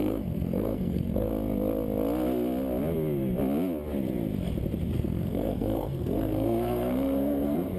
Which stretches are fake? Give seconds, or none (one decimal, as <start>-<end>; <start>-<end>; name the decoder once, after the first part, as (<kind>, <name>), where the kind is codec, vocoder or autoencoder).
0.0-1.3 (codec, SNAC); 4.9-7.8